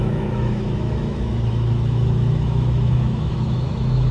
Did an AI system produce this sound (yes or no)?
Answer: yes